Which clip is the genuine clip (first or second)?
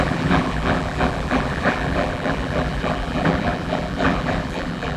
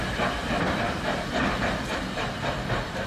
second